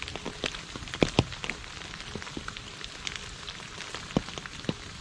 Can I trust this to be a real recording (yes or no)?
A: yes